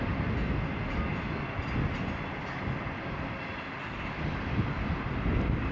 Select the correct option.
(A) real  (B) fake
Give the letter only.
A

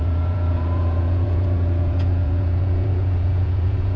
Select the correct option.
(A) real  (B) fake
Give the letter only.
B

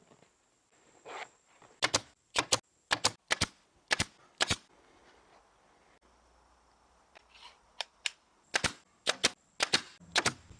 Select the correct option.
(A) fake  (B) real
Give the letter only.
B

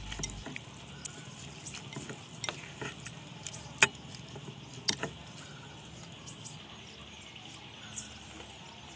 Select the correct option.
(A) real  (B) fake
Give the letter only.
A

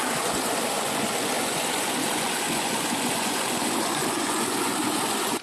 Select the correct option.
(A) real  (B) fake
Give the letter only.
B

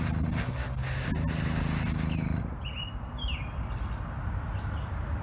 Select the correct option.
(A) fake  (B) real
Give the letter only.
B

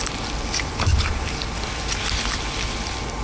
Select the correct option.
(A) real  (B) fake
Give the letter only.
A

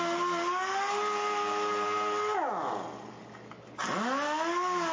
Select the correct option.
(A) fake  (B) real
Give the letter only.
B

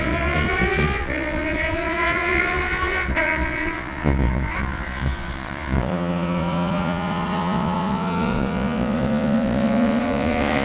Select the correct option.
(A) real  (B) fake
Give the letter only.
B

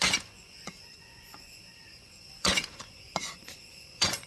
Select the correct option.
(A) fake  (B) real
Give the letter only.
A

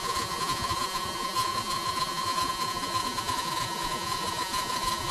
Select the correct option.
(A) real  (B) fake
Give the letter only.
B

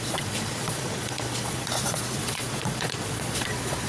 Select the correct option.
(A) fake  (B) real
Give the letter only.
A